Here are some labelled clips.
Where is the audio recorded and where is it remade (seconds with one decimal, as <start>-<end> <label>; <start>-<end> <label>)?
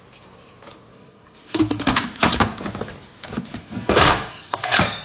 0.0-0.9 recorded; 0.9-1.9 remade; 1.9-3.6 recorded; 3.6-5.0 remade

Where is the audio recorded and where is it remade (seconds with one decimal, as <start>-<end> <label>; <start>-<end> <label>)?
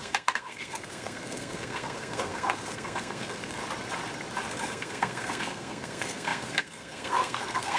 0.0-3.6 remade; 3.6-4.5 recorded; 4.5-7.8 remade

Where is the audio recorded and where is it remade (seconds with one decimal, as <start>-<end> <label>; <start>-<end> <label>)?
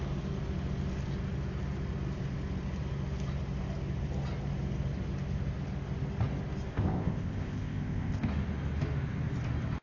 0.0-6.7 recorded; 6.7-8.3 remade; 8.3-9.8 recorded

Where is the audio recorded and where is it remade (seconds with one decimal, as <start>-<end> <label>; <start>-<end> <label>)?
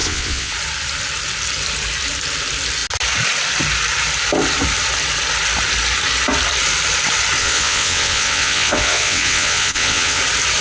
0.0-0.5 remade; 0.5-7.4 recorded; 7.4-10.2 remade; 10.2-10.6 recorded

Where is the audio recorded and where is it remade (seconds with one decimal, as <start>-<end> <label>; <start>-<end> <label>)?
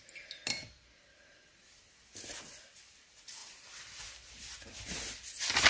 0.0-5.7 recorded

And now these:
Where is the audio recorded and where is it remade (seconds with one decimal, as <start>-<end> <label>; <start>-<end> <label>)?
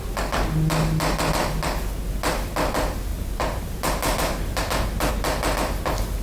0.0-3.1 recorded; 3.1-5.1 remade; 5.1-6.2 recorded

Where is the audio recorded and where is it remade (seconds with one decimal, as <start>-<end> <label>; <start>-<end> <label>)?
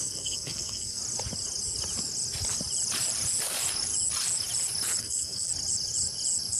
0.0-1.0 remade; 1.0-5.0 recorded; 5.0-5.5 remade; 5.5-6.6 recorded